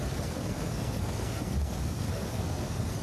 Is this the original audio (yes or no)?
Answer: no